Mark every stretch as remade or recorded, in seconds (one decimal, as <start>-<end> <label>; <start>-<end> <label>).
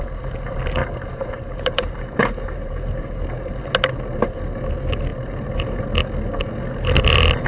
0.0-0.8 recorded; 0.8-3.6 remade; 3.6-5.1 recorded; 5.1-5.8 remade; 5.8-7.5 recorded